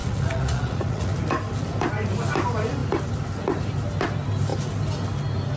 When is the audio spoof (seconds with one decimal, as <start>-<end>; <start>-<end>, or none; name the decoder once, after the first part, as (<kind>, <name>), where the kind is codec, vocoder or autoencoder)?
0.0-1.1 (vocoder, Vocos)